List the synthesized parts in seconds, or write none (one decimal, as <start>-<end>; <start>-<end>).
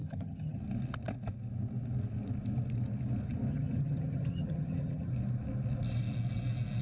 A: 0.0-0.6; 3.5-5.1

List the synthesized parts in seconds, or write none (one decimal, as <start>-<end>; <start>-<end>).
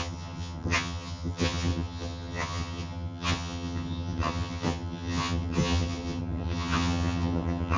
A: 0.0-7.8